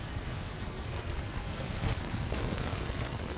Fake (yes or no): yes